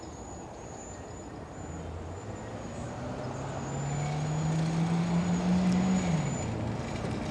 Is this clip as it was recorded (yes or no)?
yes